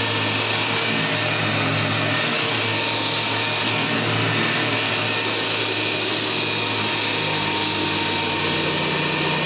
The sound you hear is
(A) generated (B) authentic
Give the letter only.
B